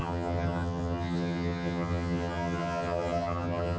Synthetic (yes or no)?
yes